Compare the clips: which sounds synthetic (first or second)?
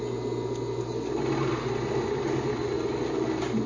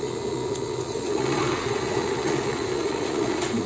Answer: second